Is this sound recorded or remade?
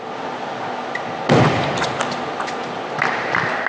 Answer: recorded